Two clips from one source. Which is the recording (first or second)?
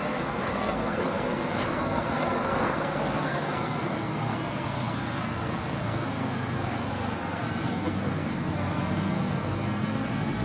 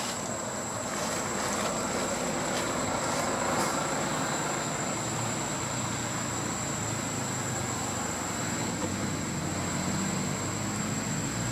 second